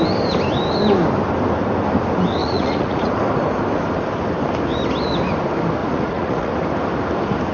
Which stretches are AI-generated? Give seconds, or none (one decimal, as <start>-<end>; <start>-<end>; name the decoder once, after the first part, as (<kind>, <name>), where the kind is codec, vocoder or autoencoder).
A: 2.4-3.1 (vocoder, Vocos); 5.8-6.5